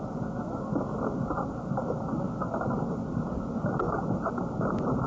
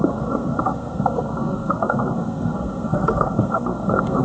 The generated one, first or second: second